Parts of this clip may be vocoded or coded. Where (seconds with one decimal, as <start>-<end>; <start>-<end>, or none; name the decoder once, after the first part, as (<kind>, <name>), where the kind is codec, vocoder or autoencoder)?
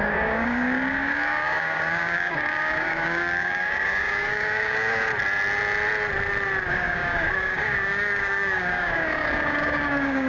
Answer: 0.0-5.1 (codec, DAC); 6.7-10.3